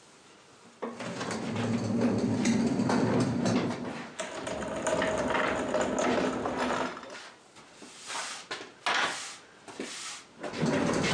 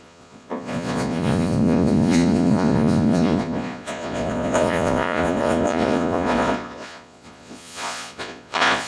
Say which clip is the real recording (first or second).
first